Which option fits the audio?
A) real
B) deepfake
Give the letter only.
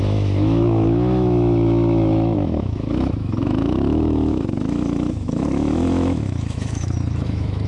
B